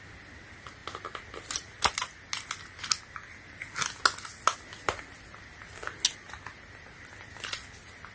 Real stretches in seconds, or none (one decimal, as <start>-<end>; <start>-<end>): 0.0-8.1